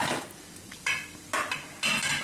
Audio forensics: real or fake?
real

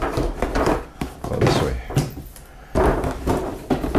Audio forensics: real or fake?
real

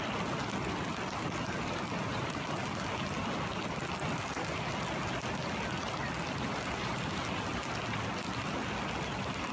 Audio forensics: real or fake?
real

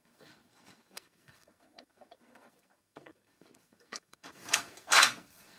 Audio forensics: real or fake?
fake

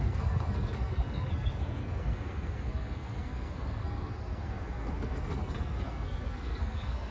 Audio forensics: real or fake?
fake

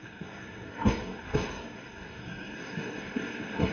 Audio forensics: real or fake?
fake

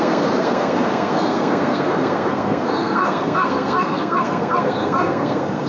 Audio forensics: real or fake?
fake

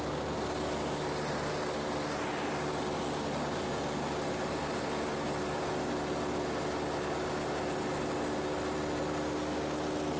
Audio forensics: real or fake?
real